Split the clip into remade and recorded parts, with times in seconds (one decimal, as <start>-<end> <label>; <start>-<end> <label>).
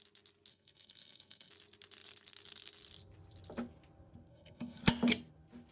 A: 0.0-0.5 recorded; 0.5-1.5 remade; 1.5-4.3 recorded; 4.3-4.8 remade; 4.8-5.7 recorded